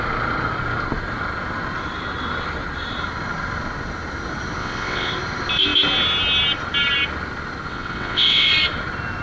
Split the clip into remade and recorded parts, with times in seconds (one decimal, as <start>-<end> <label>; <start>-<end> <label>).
0.0-4.6 recorded; 4.6-5.1 remade; 5.1-7.7 recorded; 7.7-8.5 remade; 8.5-9.2 recorded